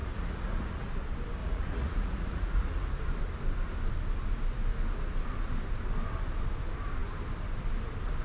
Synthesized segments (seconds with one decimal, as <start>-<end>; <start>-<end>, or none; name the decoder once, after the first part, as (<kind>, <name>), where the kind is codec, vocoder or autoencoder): 0.0-0.9 (vocoder, Vocos); 1.4-2.9